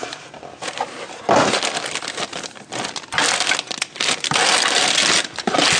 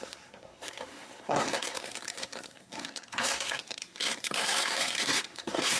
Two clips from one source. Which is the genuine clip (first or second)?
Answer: first